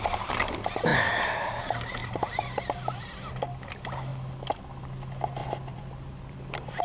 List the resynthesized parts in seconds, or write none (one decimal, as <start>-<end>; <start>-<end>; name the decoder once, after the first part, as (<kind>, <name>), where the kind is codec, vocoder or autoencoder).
0.9-1.6 (vocoder, BigVGAN v2); 2.0-3.3; 5.4-6.8